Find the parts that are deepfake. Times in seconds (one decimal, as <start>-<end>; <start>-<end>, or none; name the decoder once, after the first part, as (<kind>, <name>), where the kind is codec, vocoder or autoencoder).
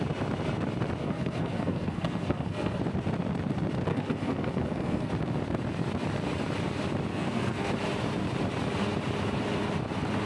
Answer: 1.0-2.8 (codec, SNAC); 3.9-5.1; 7.1-7.7